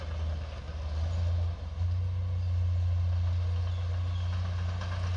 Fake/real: real